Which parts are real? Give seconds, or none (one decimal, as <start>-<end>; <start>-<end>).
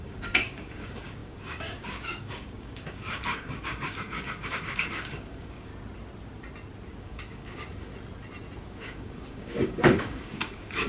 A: 5.7-7.0; 7.9-8.6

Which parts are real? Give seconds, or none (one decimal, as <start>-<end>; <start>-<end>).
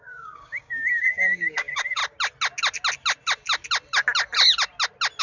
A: 2.0-5.2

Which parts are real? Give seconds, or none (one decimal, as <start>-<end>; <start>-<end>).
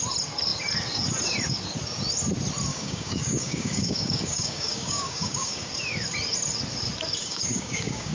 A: 0.0-2.7; 5.7-7.2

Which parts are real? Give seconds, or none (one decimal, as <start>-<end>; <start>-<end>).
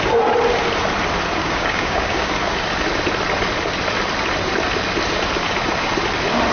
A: 0.0-1.4; 2.3-6.5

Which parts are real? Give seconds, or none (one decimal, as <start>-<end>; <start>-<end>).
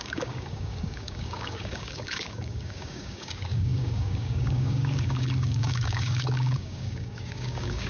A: none